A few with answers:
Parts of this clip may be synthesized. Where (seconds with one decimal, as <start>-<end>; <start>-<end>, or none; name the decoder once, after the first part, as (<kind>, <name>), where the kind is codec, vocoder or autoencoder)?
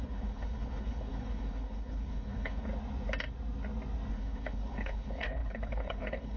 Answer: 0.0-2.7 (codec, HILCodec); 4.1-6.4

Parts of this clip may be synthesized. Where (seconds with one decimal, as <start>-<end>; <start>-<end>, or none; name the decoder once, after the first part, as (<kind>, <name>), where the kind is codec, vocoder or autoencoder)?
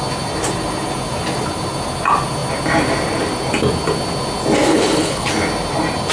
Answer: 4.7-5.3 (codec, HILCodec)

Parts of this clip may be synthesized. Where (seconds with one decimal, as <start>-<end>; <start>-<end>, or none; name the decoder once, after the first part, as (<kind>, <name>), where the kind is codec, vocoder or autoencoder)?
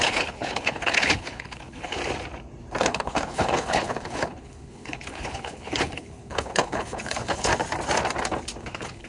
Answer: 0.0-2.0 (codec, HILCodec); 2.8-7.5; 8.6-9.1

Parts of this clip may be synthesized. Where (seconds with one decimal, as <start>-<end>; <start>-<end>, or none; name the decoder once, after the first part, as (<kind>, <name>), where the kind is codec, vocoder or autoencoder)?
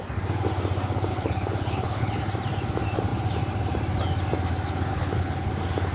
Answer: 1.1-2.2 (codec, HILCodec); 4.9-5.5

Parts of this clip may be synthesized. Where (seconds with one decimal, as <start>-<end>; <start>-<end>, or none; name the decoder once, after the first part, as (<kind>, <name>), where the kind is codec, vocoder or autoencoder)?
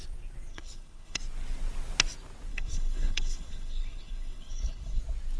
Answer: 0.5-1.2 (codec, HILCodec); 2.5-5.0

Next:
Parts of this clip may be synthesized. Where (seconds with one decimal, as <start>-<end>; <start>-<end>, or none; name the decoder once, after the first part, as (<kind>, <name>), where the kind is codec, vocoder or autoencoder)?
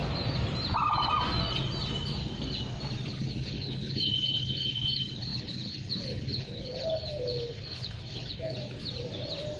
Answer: 3.1-8.6 (codec, HILCodec)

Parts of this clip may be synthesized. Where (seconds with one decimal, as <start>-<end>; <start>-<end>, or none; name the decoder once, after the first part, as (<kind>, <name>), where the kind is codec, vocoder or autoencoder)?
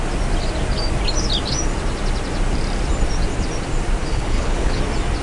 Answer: 4.0-4.8 (codec, HILCodec)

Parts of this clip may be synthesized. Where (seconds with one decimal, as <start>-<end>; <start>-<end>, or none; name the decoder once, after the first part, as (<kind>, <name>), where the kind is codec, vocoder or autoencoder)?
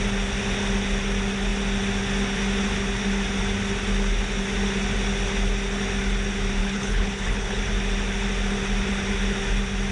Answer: 6.6-7.6 (codec, HILCodec)